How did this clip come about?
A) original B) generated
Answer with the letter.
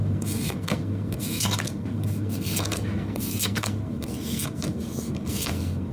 B